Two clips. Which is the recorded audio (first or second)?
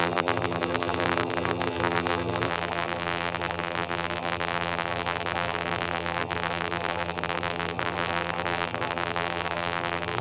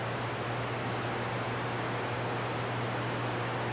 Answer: second